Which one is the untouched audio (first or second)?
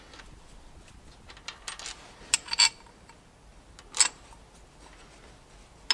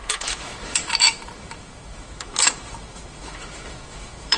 first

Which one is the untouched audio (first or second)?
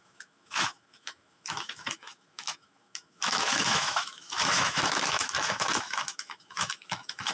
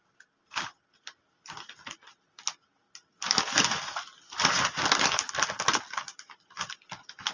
second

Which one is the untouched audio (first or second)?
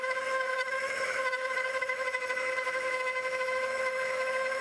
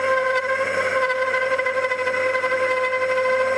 second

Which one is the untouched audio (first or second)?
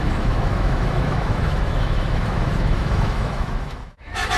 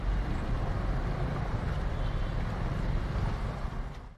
second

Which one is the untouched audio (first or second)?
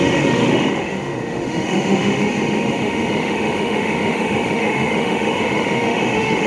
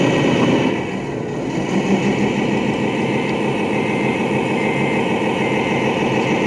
second